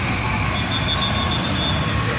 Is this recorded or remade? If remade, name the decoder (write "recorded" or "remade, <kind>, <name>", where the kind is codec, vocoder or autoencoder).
recorded